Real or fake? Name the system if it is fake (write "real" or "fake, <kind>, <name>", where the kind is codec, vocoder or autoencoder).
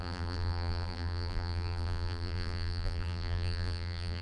fake, vocoder, BigVGAN v2